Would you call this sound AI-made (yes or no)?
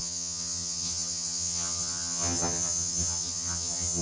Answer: yes